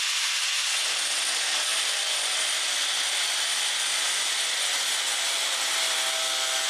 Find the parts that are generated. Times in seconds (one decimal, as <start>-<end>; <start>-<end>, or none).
none